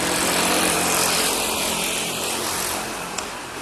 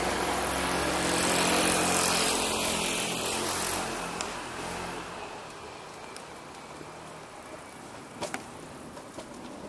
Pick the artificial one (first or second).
first